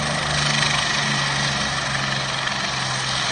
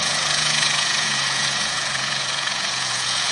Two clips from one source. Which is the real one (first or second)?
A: first